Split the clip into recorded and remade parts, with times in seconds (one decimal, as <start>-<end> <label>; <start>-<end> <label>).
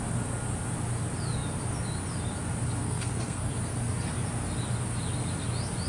0.0-2.8 recorded; 2.8-3.5 remade; 3.5-5.9 recorded